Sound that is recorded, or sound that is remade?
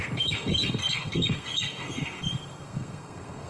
remade